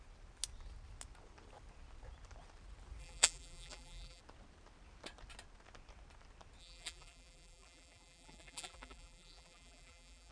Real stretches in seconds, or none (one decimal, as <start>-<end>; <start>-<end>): 0.0-3.0; 4.2-6.6